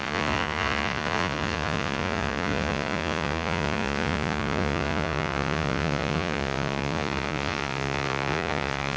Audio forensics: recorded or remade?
remade